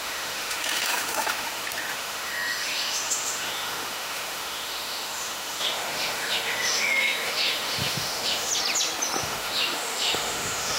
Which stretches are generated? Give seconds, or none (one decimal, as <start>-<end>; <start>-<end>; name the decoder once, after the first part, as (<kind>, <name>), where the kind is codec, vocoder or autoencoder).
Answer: 0.0-8.5 (autoencoder, DAC-VAE); 9.2-10.8